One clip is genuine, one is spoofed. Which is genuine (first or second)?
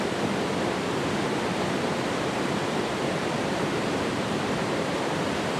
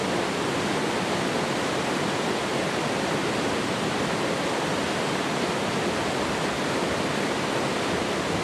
second